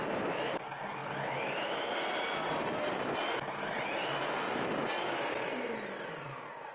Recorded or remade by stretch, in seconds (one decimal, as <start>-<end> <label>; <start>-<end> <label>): 0.0-6.7 recorded